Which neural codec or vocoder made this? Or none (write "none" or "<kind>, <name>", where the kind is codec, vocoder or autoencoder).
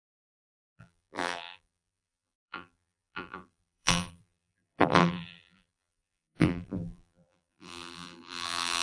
vocoder, BigVGAN v2